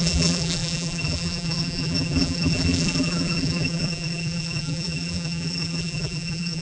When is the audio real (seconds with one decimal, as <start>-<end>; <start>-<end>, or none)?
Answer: none